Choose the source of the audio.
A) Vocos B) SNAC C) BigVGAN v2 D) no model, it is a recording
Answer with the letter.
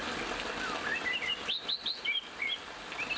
D